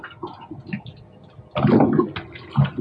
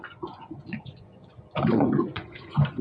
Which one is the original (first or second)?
first